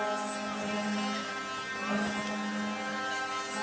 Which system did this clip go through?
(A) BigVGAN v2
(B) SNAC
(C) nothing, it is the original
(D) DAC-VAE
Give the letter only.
C